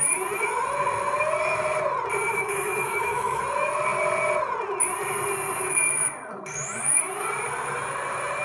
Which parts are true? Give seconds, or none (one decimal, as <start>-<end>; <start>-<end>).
0.0-2.3; 3.4-8.4